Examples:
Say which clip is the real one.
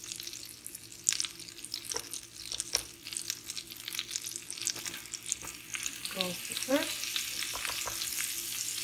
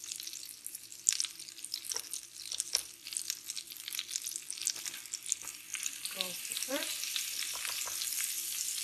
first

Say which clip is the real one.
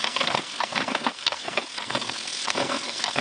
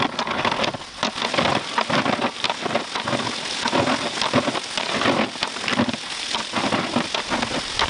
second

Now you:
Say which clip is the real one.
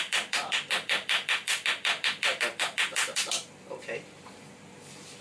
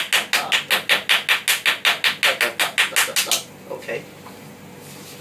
second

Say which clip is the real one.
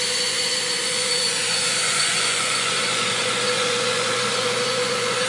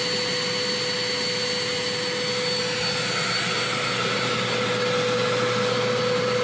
second